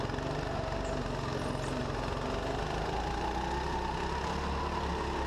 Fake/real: real